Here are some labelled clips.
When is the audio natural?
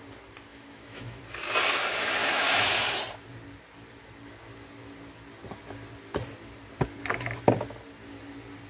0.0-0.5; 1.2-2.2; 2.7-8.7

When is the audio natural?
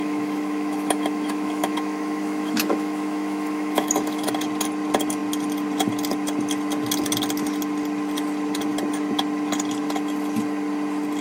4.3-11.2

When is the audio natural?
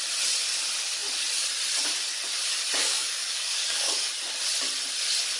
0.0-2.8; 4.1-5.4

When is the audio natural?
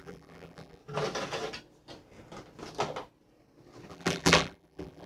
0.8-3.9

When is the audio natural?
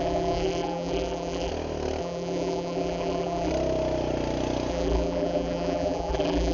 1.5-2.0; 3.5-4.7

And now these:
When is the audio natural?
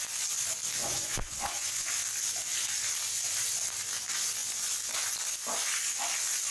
0.0-0.8; 1.9-6.5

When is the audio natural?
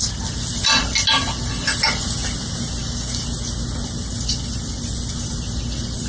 0.0-6.1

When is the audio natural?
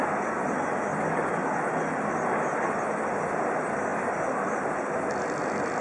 0.0-3.9; 5.1-5.8